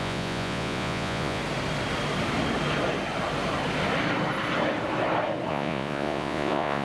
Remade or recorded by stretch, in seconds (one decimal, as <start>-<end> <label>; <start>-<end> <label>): 0.0-1.4 remade; 1.4-5.5 recorded; 5.5-6.8 remade